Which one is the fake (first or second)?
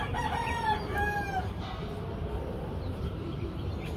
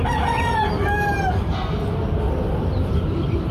first